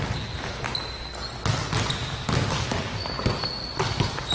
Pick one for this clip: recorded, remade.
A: recorded